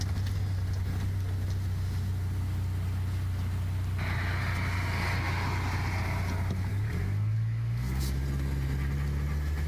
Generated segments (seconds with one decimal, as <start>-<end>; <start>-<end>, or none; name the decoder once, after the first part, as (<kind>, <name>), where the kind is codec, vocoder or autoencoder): 6.7-8.0 (codec, DAC)